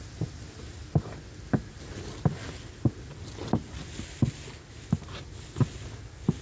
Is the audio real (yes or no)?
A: yes